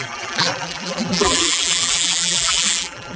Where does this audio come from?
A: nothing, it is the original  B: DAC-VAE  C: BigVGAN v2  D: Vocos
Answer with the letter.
C